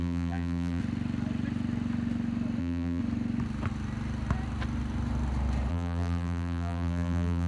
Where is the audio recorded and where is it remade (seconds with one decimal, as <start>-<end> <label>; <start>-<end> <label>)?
0.0-0.8 remade; 0.8-2.6 recorded; 2.6-3.0 remade; 3.0-5.7 recorded; 5.7-7.5 remade